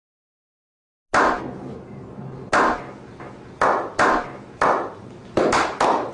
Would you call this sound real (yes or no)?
yes